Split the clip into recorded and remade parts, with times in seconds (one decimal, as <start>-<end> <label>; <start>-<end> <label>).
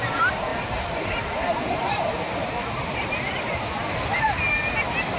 0.0-0.5 recorded; 0.5-2.3 remade; 2.3-5.2 recorded